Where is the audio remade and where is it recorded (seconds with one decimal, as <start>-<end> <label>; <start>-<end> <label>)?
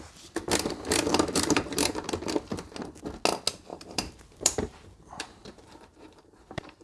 0.0-1.1 recorded; 1.1-2.1 remade; 2.1-3.7 recorded; 3.7-6.8 remade